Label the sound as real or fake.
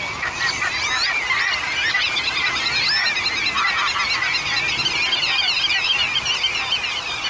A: real